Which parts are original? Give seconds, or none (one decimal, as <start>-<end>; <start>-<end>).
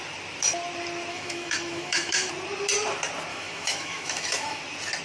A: 0.0-1.1; 2.3-3.3; 4.6-5.0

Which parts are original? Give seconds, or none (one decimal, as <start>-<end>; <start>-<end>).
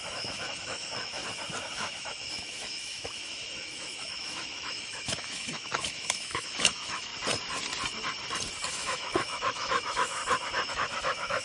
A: 1.2-1.7; 7.1-8.7; 10.2-10.7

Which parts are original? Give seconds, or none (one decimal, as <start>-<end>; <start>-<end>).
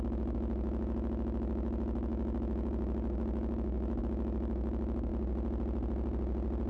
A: 5.1-6.7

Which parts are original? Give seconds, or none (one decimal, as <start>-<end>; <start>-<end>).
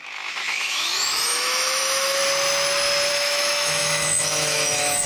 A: 2.2-3.1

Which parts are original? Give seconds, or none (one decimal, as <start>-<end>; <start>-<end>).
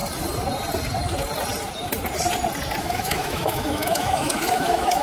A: 0.0-2.8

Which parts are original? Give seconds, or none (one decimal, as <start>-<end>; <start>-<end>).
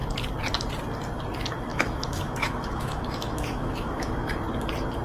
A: 0.0-1.7; 4.3-5.0